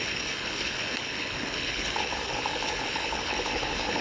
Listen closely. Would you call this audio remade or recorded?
remade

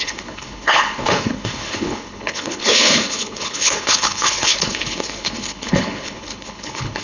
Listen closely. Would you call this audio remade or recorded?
remade